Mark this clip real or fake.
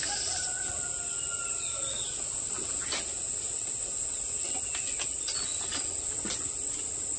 real